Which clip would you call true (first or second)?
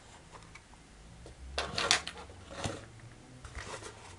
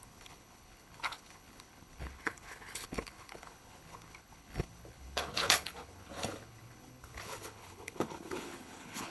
first